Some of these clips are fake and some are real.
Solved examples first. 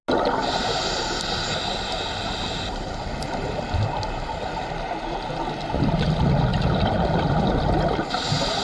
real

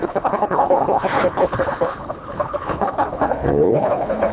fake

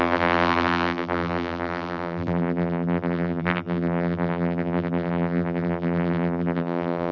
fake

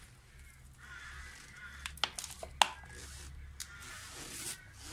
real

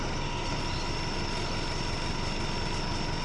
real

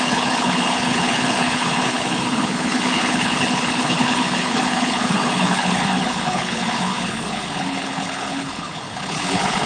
fake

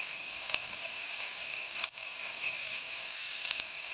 fake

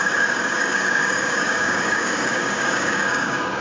fake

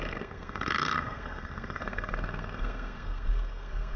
fake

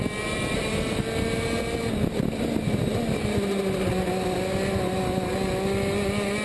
real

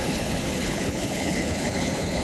fake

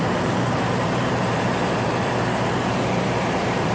fake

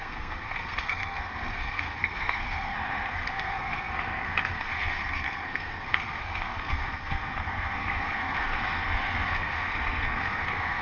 fake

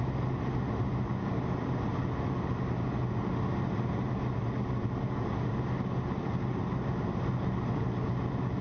real